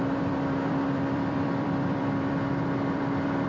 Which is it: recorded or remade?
remade